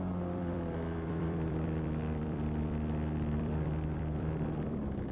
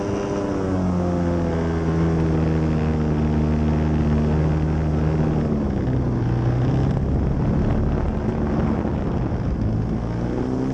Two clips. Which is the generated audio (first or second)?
first